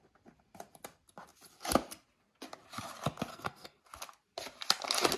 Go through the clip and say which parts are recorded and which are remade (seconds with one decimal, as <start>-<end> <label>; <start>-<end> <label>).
0.0-3.3 recorded; 3.3-3.8 remade; 3.8-5.2 recorded